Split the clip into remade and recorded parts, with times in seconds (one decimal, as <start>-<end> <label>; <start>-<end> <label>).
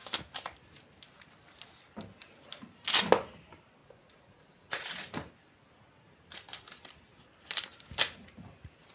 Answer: 0.0-3.8 recorded; 3.8-5.3 remade; 5.3-8.9 recorded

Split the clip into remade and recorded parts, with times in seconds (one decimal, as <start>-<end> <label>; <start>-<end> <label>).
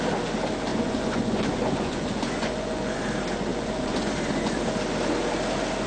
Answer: 0.0-0.7 recorded; 0.7-3.0 remade; 3.0-3.5 recorded; 3.5-4.6 remade; 4.6-5.9 recorded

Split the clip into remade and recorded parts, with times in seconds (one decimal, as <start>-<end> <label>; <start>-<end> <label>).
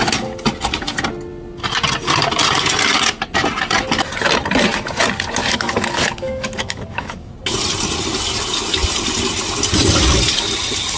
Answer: 0.0-5.4 recorded; 5.4-7.3 remade; 7.3-11.0 recorded